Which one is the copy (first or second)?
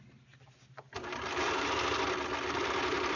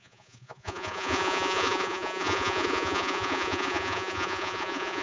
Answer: second